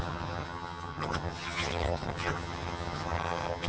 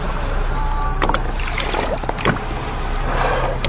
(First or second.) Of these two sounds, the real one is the second